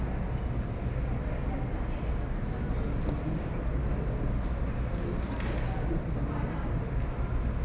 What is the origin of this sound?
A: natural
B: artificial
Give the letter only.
A